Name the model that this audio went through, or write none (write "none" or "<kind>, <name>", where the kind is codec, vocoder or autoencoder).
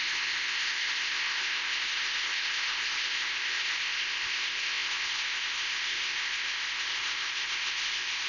codec, ZipCodec